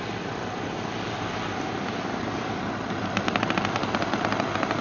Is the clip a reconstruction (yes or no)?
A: no